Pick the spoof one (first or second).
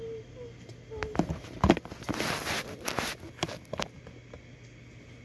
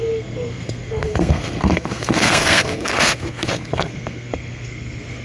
second